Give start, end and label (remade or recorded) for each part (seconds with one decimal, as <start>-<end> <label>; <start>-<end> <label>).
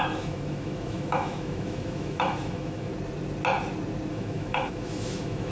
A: 0.0-2.9 remade; 2.9-4.1 recorded; 4.1-5.5 remade